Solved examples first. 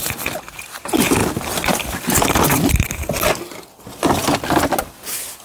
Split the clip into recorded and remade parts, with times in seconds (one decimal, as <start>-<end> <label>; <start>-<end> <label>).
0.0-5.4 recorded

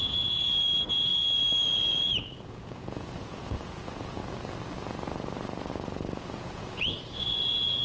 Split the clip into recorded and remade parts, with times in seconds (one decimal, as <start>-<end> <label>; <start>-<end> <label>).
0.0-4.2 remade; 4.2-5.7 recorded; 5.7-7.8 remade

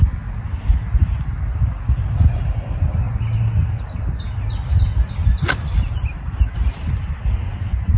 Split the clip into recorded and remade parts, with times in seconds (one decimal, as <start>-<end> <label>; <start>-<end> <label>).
0.0-8.0 recorded